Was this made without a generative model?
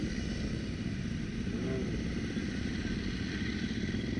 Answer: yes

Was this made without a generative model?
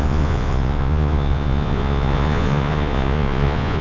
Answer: no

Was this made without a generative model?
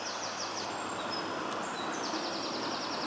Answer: yes